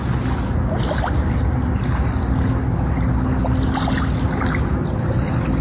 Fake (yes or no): no